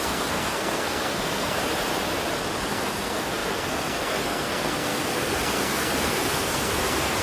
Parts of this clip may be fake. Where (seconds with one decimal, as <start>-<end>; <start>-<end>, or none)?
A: 0.0-1.6; 2.7-7.2